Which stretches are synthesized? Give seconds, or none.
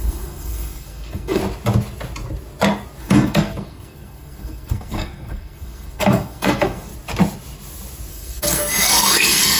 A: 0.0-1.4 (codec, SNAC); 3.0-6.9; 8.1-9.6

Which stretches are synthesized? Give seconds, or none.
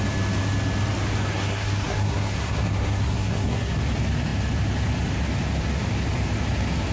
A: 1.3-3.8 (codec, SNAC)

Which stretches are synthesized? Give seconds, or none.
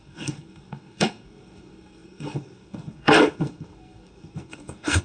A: 0.0-5.0 (codec, SNAC)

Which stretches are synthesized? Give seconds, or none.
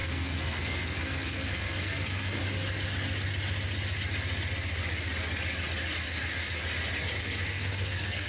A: 0.0-2.4 (codec, SNAC); 7.2-8.3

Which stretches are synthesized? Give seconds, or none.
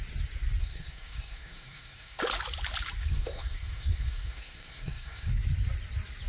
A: 0.6-2.2 (codec, SNAC); 3.0-5.3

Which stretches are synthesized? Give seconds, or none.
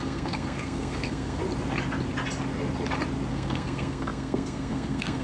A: 0.0-1.4 (codec, SNAC); 3.3-5.2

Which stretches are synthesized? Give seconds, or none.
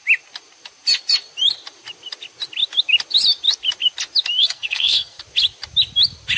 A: 4.4-5.2 (codec, SNAC)